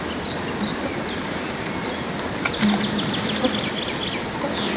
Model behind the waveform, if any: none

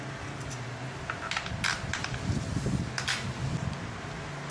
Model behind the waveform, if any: none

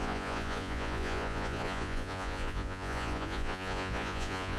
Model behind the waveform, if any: vocoder, Vocos